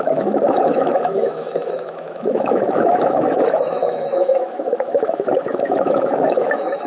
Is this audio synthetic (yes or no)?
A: yes